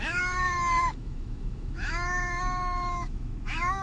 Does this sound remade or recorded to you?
remade